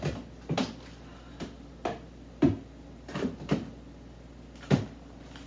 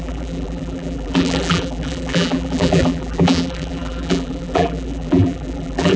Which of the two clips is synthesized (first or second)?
second